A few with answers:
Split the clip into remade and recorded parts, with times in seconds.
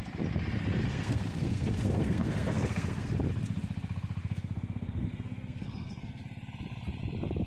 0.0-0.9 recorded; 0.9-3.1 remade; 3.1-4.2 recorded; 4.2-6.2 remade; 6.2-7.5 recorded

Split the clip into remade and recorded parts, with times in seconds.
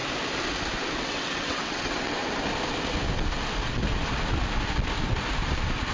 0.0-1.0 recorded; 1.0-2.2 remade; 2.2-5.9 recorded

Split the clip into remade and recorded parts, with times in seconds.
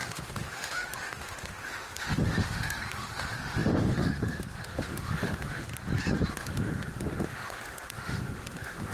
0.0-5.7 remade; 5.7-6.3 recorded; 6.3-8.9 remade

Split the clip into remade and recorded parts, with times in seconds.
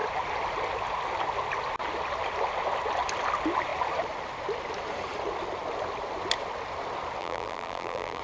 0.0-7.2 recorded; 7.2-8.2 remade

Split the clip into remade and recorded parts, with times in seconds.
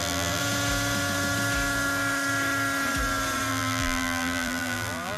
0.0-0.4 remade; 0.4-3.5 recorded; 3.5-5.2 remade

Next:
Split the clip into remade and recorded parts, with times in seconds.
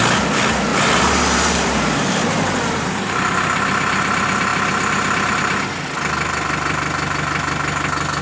0.0-0.7 recorded; 0.7-3.2 remade; 3.2-8.2 recorded